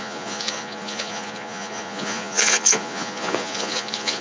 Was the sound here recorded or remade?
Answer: remade